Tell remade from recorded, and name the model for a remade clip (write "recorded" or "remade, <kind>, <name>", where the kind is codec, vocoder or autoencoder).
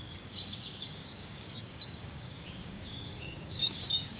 remade, codec, DAC